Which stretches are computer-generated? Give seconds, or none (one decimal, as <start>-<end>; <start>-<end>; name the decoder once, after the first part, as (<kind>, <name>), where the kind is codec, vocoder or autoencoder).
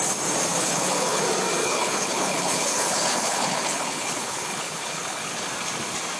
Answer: 0.5-1.2 (codec, HILCodec); 1.6-5.3